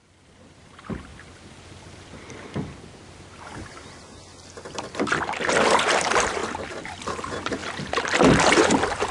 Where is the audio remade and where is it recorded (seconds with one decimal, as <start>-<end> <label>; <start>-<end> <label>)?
0.0-1.1 remade; 1.1-5.3 recorded; 5.3-6.4 remade; 6.4-7.0 recorded; 7.0-7.6 remade; 7.6-9.1 recorded